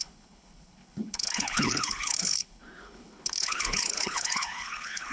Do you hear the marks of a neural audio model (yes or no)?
yes